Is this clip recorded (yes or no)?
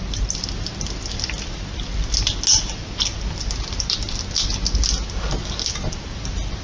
yes